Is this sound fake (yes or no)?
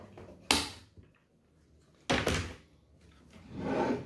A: no